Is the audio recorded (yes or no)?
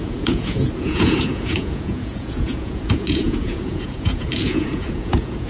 no